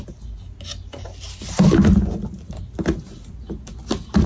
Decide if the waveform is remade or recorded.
recorded